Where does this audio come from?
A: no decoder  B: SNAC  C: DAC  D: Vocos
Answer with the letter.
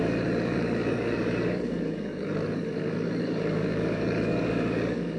C